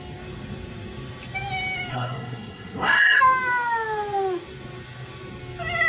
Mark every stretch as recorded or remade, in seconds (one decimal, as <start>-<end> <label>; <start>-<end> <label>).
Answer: 0.0-1.9 recorded; 1.9-3.2 remade; 3.2-5.9 recorded